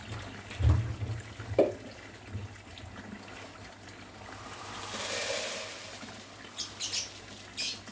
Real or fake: real